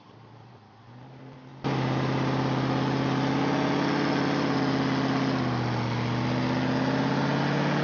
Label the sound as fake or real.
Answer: real